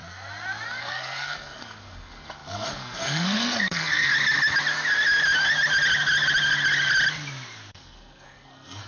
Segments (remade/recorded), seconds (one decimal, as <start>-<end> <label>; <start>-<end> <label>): 0.0-0.8 recorded; 0.8-4.1 remade; 4.1-7.7 recorded; 7.7-8.9 remade